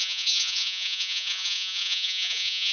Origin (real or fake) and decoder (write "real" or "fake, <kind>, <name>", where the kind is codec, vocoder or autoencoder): fake, vocoder, Vocos